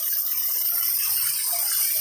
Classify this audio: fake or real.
real